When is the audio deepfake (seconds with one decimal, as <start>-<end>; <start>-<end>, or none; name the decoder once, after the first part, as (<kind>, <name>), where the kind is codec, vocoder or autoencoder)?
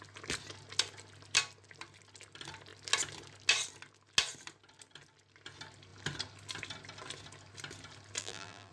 8.2-8.7 (vocoder, BigVGAN v2)